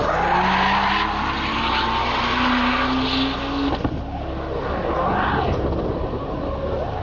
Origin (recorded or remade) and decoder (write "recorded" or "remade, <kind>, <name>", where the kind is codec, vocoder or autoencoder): recorded